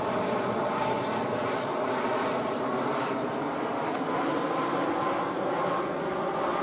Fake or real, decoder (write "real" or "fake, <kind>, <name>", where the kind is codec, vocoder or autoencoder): real